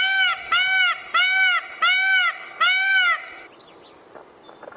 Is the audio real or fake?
real